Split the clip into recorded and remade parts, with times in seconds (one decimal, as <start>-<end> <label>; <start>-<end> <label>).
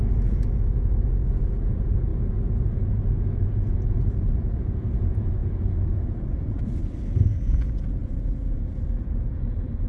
0.0-6.8 remade; 6.8-7.5 recorded; 7.5-9.9 remade